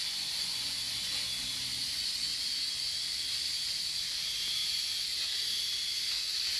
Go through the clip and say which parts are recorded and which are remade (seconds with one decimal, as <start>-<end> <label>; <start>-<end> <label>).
0.0-1.1 remade; 1.1-1.8 recorded; 1.8-2.3 remade; 2.3-6.6 recorded

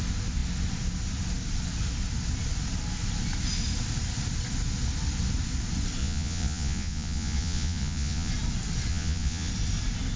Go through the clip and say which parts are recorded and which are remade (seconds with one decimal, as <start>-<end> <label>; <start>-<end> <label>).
0.0-6.0 recorded; 6.0-8.3 remade; 8.3-8.9 recorded; 8.9-9.5 remade; 9.5-10.2 recorded

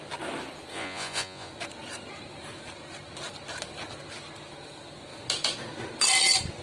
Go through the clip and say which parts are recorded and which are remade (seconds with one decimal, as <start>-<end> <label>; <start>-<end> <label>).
0.0-0.7 recorded; 0.7-1.5 remade; 1.5-6.6 recorded